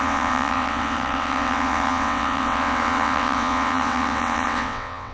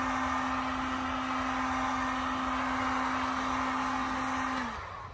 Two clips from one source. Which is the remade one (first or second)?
first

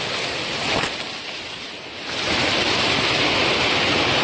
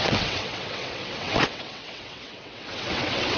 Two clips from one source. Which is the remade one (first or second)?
second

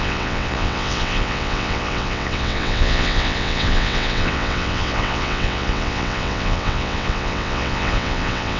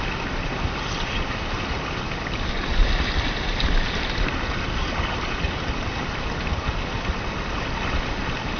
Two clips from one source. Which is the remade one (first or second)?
first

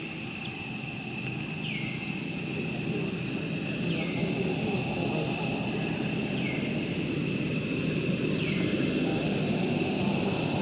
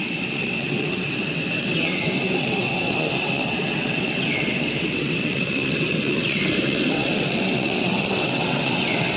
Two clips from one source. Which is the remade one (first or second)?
second